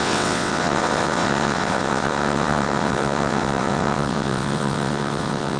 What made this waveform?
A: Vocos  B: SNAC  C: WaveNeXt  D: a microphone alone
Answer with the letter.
C